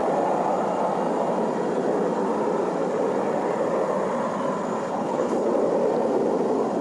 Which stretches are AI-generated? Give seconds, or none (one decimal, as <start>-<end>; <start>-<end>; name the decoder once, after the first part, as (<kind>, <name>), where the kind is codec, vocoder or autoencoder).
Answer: 4.9-5.5 (codec, HILCodec)

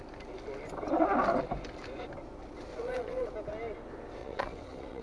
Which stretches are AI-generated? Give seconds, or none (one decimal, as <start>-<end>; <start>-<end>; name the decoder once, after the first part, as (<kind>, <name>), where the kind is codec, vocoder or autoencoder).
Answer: 2.7-3.3 (vocoder, WaveNeXt); 4.2-5.0

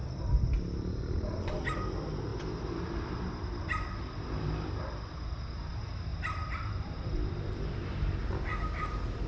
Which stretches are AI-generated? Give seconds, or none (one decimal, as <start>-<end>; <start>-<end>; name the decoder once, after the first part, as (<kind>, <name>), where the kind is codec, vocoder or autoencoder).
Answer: 0.0-1.8 (vocoder, BigVGAN v2); 6.1-7.9

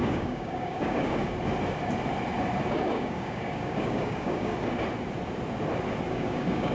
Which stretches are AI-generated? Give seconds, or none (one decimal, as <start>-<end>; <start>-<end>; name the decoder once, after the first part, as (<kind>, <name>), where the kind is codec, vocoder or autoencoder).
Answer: 0.0-1.2 (codec, DAC); 2.9-4.5; 6.1-6.7

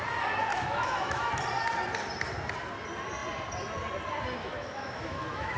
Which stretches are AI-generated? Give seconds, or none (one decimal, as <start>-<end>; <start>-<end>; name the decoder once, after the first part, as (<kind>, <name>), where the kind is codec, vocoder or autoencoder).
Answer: 0.5-1.3 (autoencoder, DAC-VAE); 4.4-5.6